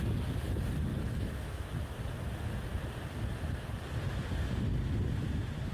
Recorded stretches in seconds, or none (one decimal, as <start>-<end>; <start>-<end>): 0.0-0.9; 1.7-5.7